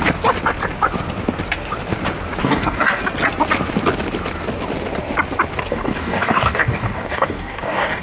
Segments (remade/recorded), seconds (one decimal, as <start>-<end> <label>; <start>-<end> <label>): 0.0-2.4 recorded; 2.4-3.0 remade; 3.0-5.7 recorded; 5.7-8.0 remade